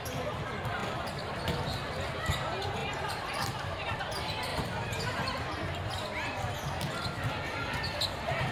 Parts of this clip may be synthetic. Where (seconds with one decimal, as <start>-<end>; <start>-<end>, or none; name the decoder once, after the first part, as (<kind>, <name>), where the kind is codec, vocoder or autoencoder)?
2.8-4.0 (vocoder, BigVGAN v2); 4.5-5.9